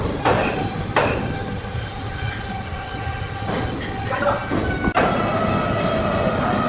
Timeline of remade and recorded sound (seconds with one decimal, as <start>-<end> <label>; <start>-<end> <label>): 0.0-6.7 recorded